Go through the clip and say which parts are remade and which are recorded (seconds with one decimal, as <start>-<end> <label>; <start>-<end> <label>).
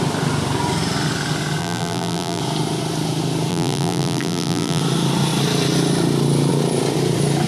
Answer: 0.0-1.6 recorded; 1.6-2.4 remade; 2.4-3.5 recorded; 3.5-4.8 remade; 4.8-7.5 recorded